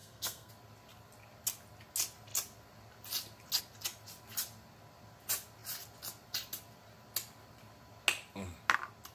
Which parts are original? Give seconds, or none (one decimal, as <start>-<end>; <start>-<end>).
0.5-9.1